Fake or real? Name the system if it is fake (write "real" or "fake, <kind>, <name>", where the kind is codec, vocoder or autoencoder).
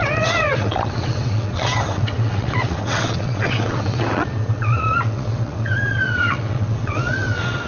fake, vocoder, WaveNeXt